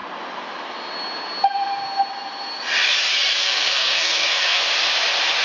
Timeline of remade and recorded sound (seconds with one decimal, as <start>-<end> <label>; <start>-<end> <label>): 0.0-3.4 recorded; 3.4-4.6 remade; 4.6-5.4 recorded